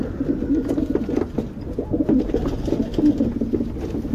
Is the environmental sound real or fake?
real